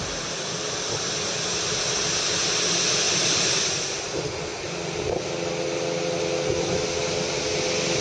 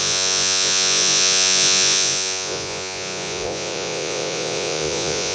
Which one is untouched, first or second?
first